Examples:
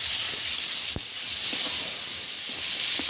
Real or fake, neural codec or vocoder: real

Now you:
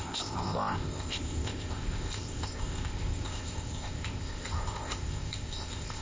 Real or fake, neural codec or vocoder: fake, codec, ZipCodec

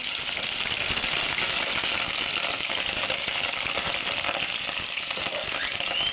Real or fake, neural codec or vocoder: real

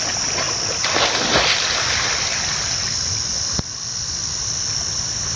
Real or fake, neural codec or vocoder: real